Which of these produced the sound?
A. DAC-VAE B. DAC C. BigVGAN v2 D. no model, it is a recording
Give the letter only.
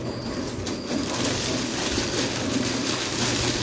D